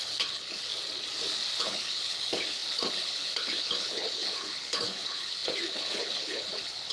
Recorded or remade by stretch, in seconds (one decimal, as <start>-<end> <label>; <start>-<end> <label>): 0.0-0.7 remade; 0.7-1.6 recorded; 1.6-6.9 remade